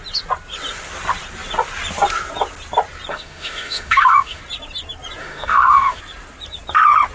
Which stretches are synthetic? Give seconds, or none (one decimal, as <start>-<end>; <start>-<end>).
3.1-4.4; 5.2-6.0